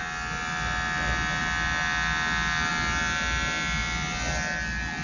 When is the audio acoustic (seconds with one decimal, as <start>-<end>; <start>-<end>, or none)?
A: 0.0-5.0

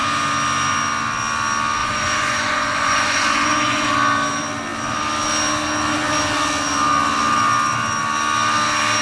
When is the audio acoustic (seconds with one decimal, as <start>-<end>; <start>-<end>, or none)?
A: 0.0-1.8; 3.9-9.0

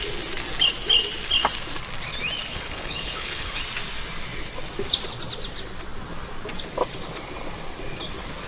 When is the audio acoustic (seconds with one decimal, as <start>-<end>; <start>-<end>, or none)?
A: 0.0-2.5; 3.6-8.5

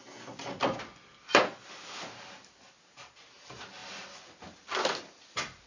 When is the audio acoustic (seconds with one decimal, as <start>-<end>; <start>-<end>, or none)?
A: 0.0-5.7

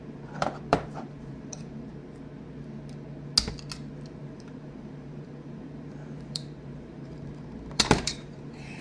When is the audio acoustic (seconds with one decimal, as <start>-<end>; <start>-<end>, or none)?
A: 1.9-4.1

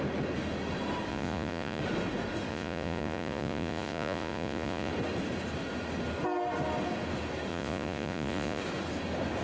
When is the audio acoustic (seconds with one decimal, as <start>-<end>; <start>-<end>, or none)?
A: 0.0-1.1; 1.8-2.5; 4.9-7.5; 8.6-9.4

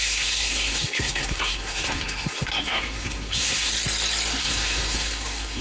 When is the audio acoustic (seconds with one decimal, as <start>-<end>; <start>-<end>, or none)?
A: 3.7-4.4